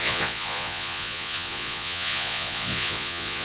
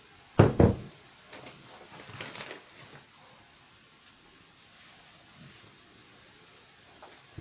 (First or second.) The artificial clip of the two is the first